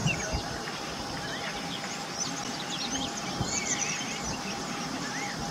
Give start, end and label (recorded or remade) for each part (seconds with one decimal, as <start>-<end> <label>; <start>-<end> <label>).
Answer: 0.0-5.5 recorded